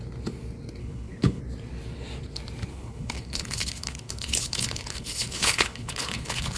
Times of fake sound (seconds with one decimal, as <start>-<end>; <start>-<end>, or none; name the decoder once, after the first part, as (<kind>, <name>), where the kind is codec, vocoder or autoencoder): 0.8-1.4 (codec, HILCodec); 2.7-6.6

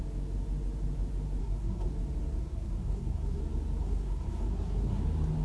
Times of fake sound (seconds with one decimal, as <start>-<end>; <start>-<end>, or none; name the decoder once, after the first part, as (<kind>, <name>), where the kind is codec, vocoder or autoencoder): 1.4-1.9 (codec, SNAC); 2.4-3.4; 3.8-5.0